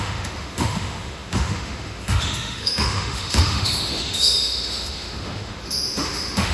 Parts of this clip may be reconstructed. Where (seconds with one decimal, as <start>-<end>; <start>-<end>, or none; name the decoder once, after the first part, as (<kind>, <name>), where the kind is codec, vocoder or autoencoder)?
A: 0.0-6.5 (autoencoder, DAC-VAE)